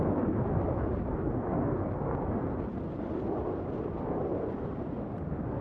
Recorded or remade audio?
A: recorded